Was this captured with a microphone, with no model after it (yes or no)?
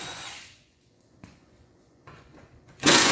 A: no